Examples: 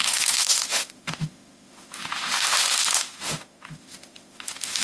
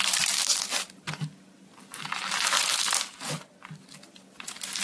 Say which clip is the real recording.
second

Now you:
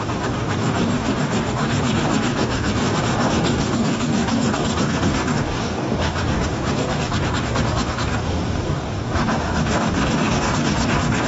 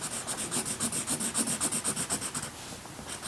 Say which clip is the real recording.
second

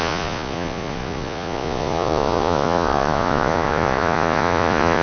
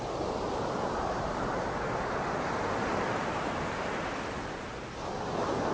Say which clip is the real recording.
second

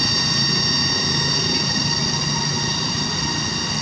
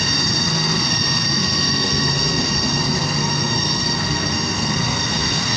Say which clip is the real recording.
first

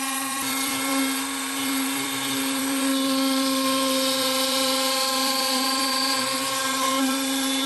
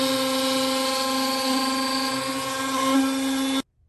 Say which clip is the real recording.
second